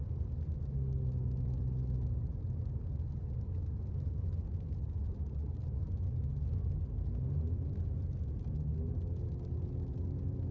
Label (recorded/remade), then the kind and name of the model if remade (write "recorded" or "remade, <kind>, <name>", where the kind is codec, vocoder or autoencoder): recorded